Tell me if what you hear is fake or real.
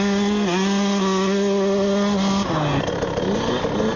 real